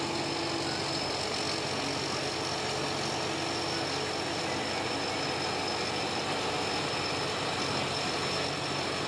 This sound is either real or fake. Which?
real